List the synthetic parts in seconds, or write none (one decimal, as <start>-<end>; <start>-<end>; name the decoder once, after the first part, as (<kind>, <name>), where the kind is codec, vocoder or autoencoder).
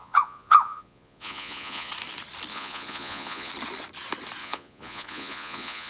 0.0-1.9 (vocoder, Vocos); 2.5-3.5; 4.4-5.9